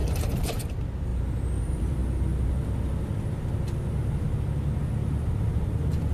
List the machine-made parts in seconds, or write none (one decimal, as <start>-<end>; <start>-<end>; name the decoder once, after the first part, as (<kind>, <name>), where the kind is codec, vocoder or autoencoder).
0.0-1.1 (vocoder, BigVGAN v2); 1.6-2.0; 5.4-6.1